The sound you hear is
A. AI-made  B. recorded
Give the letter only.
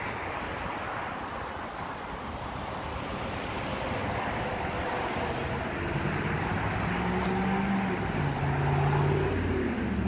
B